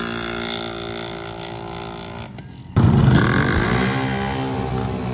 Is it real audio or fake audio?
real